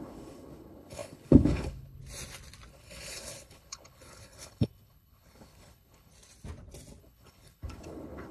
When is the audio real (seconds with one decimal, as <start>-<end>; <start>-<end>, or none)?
2.0-2.7; 6.1-7.0